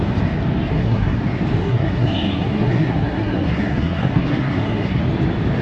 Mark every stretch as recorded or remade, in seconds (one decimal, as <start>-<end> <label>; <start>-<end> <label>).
0.0-0.7 recorded; 0.7-1.2 remade; 1.2-1.6 recorded; 1.6-5.0 remade; 5.0-5.6 recorded